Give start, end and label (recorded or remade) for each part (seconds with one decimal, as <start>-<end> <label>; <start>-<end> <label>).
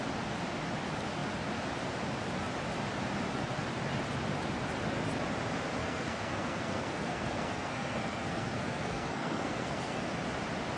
0.0-5.8 recorded; 5.8-10.0 remade; 10.0-10.8 recorded